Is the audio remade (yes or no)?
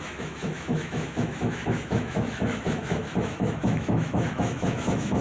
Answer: yes